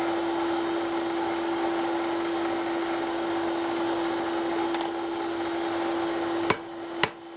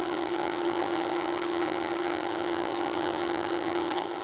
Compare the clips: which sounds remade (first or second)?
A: second